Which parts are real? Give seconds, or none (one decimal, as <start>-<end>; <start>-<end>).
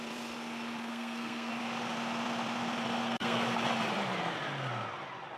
0.0-0.9; 1.5-3.0; 3.6-5.4